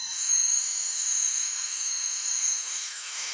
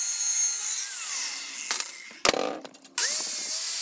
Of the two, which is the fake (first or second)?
first